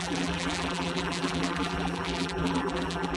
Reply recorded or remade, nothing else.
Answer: remade